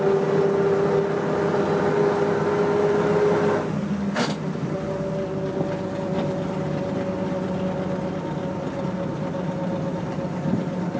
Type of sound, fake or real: real